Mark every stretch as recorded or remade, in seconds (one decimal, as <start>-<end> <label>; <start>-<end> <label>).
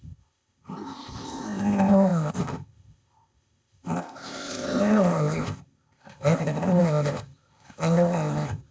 0.0-8.7 remade